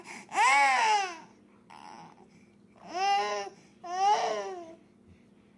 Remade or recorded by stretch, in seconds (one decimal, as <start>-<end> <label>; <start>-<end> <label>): 0.0-3.3 recorded; 3.3-3.8 remade; 3.8-5.6 recorded